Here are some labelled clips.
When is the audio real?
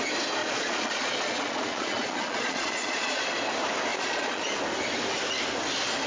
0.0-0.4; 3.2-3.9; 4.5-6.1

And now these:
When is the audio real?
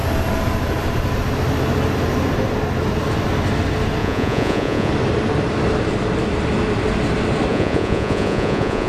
0.0-4.0; 4.9-7.5